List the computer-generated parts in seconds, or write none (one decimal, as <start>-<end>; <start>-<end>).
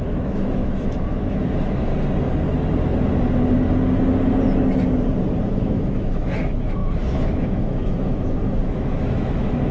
0.0-1.9; 5.5-9.7